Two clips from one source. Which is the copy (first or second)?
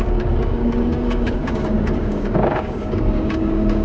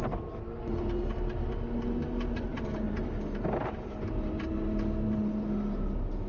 first